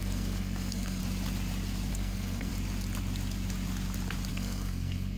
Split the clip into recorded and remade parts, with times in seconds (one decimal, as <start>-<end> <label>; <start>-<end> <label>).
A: 0.0-1.0 remade; 1.0-1.9 recorded; 1.9-2.5 remade; 2.5-4.3 recorded; 4.3-5.2 remade

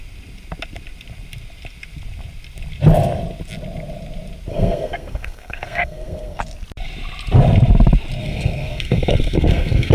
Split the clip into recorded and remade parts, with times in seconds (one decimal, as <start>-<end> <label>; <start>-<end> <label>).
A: 0.0-4.5 recorded; 4.5-6.4 remade; 6.4-8.2 recorded; 8.2-9.9 remade

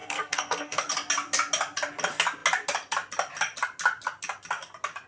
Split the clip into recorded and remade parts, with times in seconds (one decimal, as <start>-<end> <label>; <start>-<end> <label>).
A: 0.0-0.9 remade; 0.9-5.1 recorded

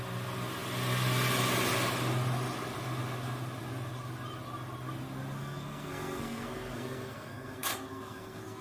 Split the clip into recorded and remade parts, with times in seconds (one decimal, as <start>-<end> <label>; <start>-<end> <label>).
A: 0.0-5.4 recorded; 5.4-8.6 remade

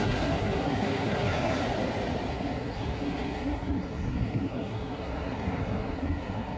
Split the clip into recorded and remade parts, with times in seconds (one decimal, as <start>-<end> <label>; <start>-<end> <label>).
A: 0.0-1.6 remade; 1.6-2.3 recorded; 2.3-6.6 remade

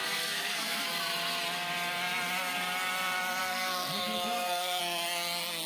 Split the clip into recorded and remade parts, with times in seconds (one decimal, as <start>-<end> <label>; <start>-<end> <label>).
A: 0.0-0.8 remade; 0.8-3.4 recorded; 3.4-4.8 remade; 4.8-5.7 recorded

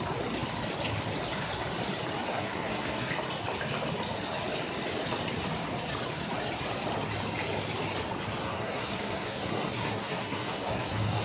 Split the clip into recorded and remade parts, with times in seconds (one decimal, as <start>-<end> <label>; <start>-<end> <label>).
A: 0.0-2.3 recorded; 2.3-3.1 remade; 3.1-8.4 recorded; 8.4-11.2 remade

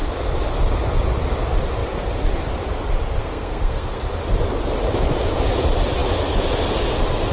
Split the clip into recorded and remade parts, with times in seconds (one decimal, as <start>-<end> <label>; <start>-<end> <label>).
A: 0.0-3.2 recorded; 3.2-4.0 remade; 4.0-7.3 recorded